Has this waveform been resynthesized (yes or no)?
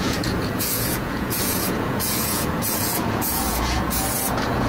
yes